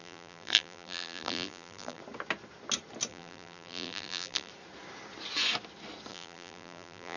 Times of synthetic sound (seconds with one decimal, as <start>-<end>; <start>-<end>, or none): 0.0-2.0; 3.1-4.5; 6.1-7.2